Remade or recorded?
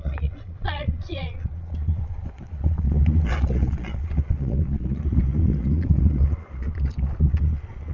remade